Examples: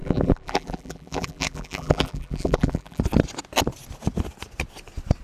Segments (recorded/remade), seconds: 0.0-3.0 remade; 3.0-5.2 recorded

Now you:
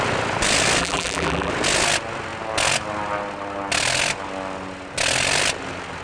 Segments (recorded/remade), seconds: 0.0-0.8 recorded; 0.8-1.5 remade; 1.5-6.0 recorded

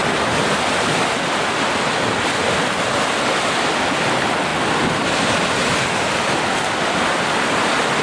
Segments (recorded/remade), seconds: 0.0-8.0 recorded